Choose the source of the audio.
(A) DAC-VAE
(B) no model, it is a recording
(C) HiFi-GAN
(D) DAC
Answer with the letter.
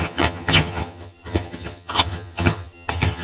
C